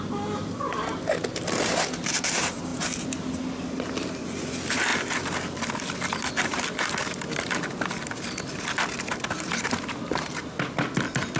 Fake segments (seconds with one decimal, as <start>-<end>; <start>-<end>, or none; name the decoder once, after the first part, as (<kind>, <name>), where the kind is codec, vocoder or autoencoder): none